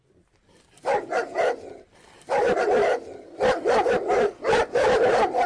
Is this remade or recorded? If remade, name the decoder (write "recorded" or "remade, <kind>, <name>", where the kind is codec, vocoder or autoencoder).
recorded